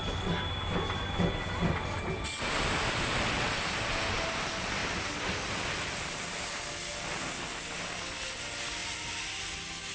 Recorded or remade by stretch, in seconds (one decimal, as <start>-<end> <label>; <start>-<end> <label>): 0.0-9.9 recorded